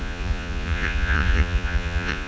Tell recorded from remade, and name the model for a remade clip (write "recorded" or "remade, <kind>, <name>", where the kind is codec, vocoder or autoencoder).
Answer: remade, vocoder, Vocos